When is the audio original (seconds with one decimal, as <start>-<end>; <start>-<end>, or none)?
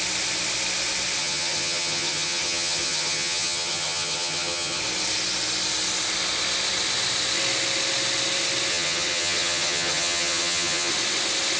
0.0-1.2; 4.8-8.7; 10.9-11.6